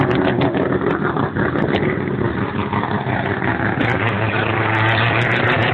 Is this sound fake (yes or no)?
no